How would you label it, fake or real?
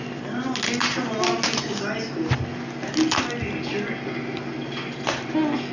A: real